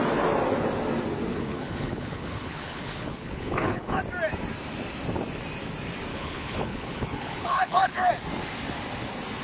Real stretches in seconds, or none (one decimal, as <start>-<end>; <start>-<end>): 0.0-1.3; 4.0-6.1; 8.1-9.4